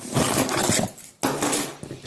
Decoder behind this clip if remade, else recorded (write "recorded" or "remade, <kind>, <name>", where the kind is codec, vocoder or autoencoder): recorded